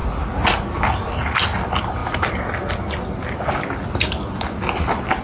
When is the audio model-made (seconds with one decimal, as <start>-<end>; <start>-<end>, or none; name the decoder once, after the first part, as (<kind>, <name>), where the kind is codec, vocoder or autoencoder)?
none